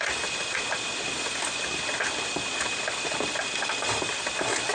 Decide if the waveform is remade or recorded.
recorded